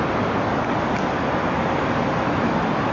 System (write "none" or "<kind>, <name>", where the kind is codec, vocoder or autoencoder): none